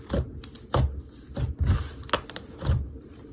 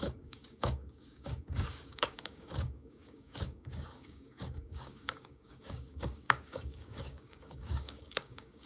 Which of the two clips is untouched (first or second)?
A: first